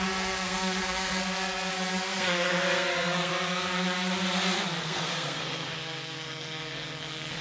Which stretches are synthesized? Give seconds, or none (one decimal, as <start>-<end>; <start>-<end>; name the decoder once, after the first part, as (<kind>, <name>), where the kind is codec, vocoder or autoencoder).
0.0-1.2 (codec, SNAC); 1.7-3.3; 4.8-7.4